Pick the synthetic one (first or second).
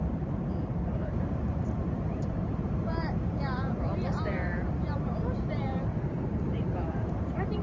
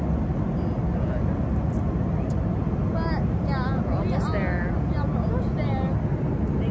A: first